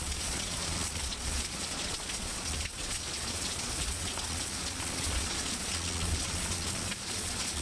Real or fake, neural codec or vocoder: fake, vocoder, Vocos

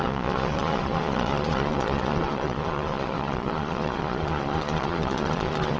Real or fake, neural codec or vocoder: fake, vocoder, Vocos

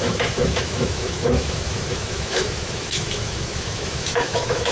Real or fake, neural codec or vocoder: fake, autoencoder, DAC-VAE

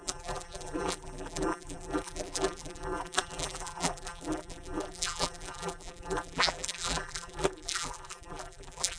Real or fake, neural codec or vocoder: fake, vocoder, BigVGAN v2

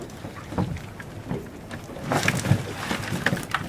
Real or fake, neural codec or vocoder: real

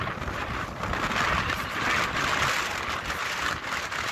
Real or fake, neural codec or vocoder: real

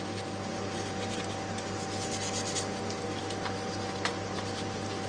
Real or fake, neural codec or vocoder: real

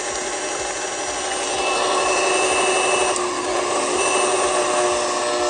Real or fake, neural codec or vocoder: real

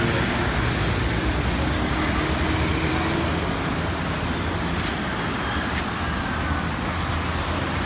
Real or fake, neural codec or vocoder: real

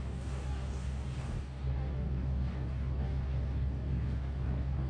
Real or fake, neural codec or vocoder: fake, codec, DAC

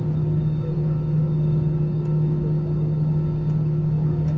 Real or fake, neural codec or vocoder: fake, codec, DAC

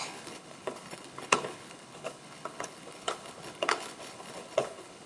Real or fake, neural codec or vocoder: fake, codec, HILCodec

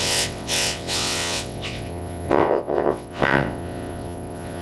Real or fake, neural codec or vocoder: fake, vocoder, WaveNeXt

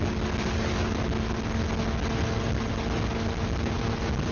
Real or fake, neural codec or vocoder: real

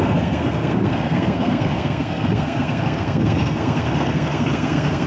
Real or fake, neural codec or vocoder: fake, codec, SNAC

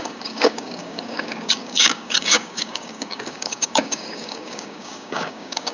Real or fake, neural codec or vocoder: fake, codec, DAC